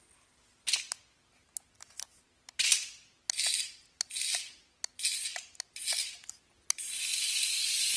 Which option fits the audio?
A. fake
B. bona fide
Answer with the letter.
B